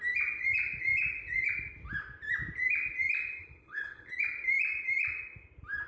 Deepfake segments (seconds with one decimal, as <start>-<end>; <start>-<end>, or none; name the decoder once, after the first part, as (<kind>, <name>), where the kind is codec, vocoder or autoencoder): 3.4-4.1 (codec, HILCodec)